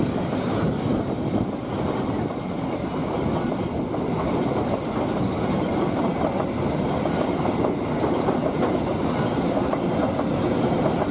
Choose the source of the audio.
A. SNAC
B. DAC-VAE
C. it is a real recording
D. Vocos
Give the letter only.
C